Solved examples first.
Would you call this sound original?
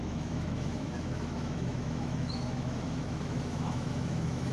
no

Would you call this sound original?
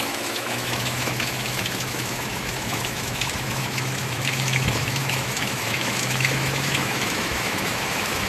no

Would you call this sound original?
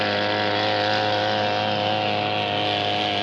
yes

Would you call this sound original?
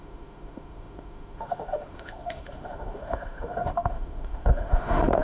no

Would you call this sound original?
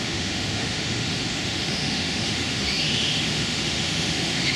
no